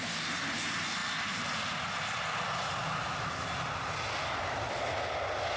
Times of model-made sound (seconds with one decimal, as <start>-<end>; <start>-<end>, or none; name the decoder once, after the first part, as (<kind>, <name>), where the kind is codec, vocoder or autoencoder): none